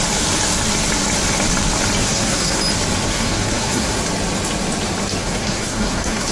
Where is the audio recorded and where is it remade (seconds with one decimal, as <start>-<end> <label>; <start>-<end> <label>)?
0.0-2.0 recorded; 2.0-2.6 remade; 2.6-3.1 recorded; 3.1-4.0 remade; 4.0-5.2 recorded; 5.2-6.3 remade